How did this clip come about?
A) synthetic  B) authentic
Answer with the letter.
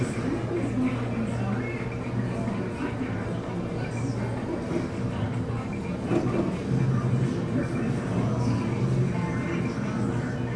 B